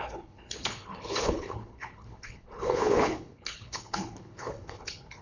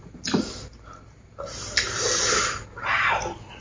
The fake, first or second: first